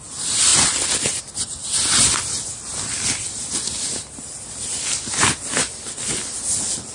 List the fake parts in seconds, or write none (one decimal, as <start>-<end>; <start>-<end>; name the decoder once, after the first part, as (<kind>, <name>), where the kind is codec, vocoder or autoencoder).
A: 0.5-1.2 (vocoder, BigVGAN v2)